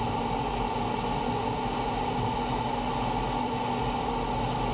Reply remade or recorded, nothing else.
recorded